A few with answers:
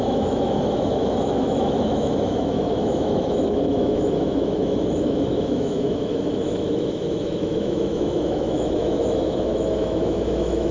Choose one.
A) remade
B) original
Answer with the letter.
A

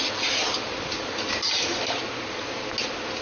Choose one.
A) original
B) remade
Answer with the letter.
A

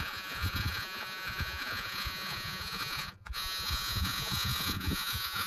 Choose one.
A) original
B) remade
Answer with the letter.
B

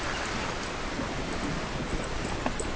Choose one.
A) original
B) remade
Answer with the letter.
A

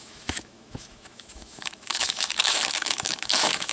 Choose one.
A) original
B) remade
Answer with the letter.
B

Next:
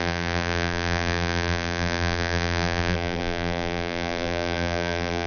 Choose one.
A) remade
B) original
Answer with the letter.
A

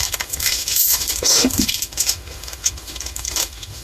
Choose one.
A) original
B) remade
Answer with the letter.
B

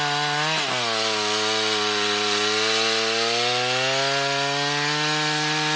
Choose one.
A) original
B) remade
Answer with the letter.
A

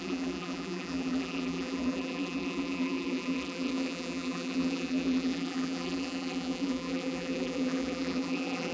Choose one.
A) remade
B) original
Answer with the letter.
A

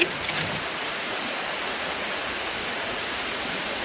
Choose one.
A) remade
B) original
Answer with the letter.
A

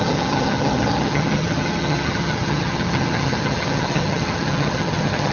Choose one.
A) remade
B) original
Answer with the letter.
A